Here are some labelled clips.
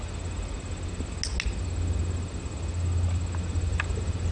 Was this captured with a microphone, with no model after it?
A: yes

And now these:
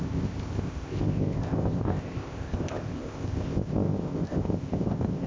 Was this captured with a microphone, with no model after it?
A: no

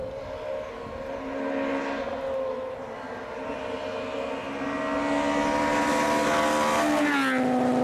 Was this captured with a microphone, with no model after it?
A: yes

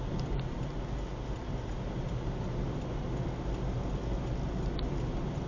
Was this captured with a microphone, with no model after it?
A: yes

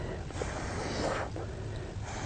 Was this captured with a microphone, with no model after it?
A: yes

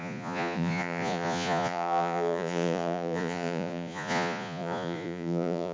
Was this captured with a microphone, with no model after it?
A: no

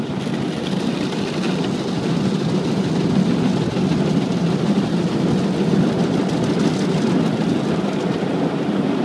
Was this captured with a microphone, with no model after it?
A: yes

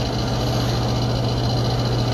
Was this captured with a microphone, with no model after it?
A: yes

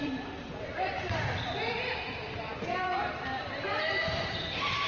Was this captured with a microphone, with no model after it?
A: no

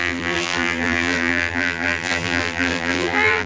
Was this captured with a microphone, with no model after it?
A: no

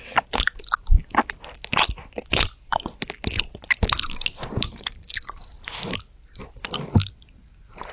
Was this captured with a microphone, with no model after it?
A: yes